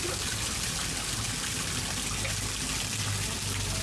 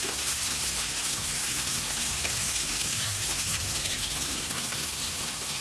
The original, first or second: first